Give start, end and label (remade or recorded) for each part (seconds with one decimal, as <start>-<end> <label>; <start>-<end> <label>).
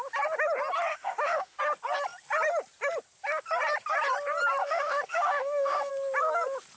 0.0-0.9 recorded; 0.9-1.6 remade; 1.6-4.6 recorded; 4.6-5.9 remade; 5.9-6.8 recorded